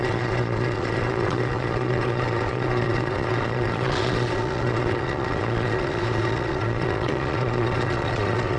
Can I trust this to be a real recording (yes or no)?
no